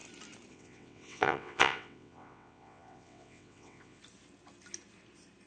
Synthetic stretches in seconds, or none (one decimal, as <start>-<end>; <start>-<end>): 0.5-4.0